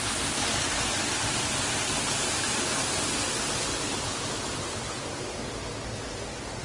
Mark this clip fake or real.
real